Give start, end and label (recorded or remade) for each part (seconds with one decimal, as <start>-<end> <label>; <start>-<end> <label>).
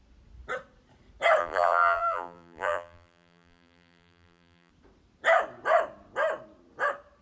0.0-1.4 recorded; 1.4-4.7 remade; 4.7-7.2 recorded